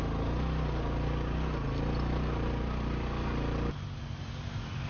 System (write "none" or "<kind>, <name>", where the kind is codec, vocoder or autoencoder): none